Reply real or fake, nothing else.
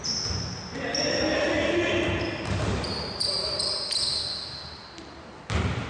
real